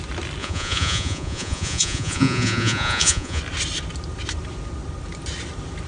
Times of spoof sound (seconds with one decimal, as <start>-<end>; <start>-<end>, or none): 0.4-3.4